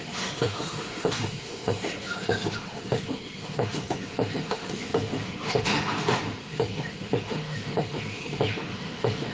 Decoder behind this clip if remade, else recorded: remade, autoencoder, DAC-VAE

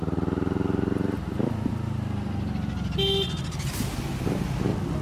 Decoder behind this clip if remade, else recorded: recorded